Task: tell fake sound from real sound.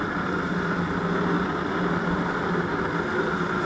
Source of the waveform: real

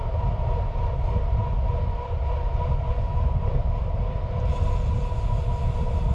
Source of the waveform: real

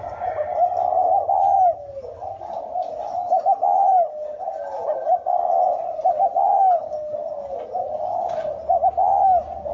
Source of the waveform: real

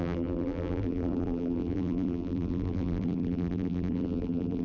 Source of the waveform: fake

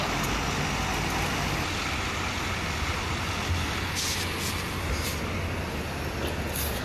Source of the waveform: real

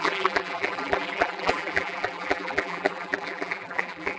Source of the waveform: fake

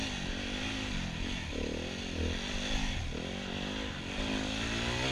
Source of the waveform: real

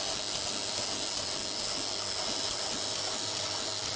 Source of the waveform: real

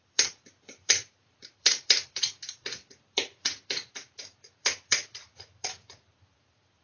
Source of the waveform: fake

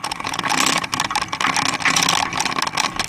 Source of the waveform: real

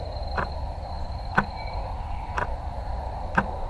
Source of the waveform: fake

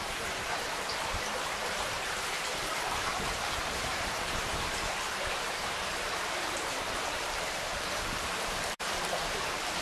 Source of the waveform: fake